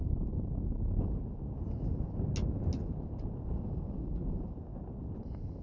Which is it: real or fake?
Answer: real